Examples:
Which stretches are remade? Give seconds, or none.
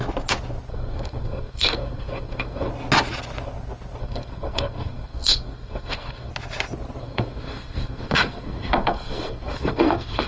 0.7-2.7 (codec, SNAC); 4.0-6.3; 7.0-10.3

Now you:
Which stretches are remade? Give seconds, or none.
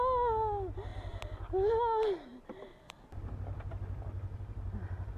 none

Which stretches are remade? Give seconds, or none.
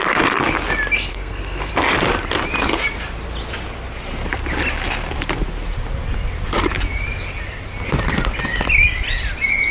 1.1-1.7 (codec, SNAC)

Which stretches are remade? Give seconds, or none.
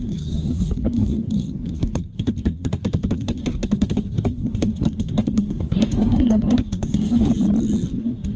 0.0-7.3 (codec, SNAC); 8.0-8.4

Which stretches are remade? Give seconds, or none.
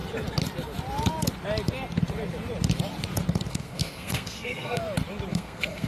3.5-4.8 (codec, SNAC); 5.3-5.9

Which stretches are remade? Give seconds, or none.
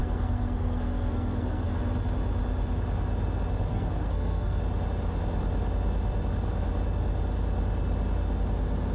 0.0-1.8 (codec, SNAC); 3.7-4.6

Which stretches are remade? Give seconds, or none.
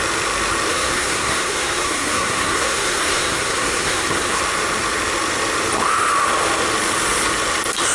0.7-4.4 (codec, SNAC)